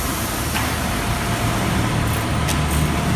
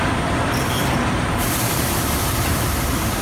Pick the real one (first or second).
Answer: first